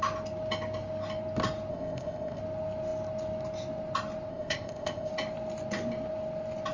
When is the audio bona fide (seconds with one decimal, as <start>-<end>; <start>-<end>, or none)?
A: 0.0-1.7; 2.4-4.3; 5.1-6.7